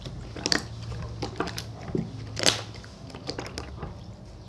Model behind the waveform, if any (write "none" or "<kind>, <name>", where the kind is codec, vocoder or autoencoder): none